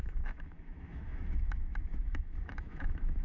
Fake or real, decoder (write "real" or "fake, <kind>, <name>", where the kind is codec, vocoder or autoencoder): fake, autoencoder, DAC-VAE